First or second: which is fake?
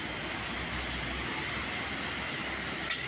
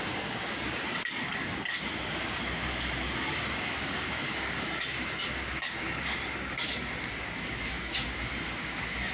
second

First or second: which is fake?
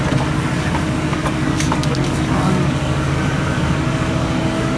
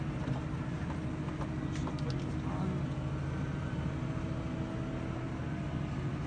first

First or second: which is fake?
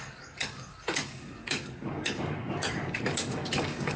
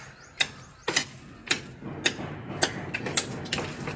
first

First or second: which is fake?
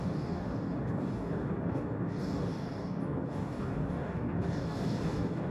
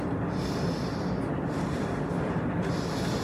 first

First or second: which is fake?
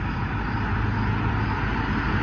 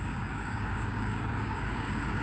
second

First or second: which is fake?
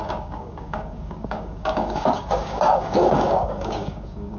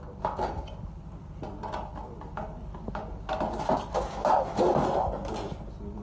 first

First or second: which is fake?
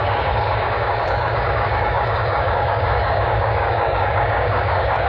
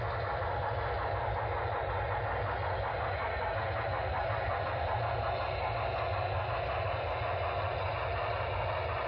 first